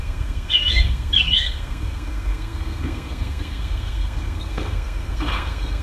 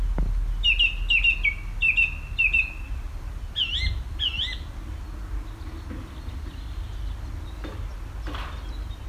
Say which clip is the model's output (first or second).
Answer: first